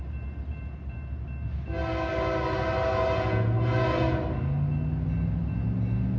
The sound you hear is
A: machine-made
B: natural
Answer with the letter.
B